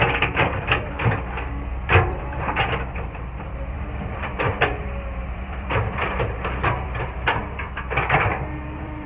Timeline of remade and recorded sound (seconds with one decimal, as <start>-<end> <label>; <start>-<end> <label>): 0.0-7.4 remade; 7.4-8.3 recorded; 8.3-9.1 remade